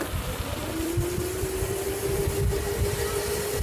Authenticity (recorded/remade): remade